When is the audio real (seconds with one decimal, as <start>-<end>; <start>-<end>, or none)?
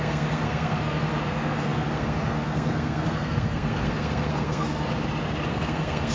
4.9-5.5